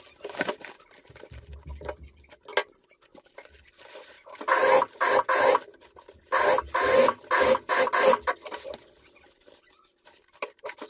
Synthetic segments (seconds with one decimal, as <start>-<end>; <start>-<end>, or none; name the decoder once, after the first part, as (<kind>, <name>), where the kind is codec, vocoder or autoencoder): none